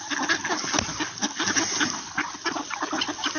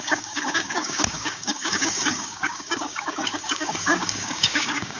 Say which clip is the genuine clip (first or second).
first